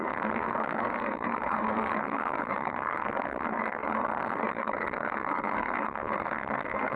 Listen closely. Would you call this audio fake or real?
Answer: fake